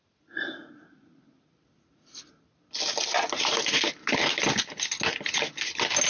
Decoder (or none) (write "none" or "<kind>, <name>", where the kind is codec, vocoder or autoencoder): none